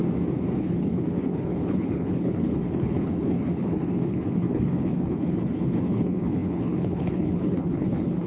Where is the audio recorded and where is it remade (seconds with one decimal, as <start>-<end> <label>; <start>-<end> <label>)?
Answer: 0.0-0.6 recorded; 0.6-8.3 remade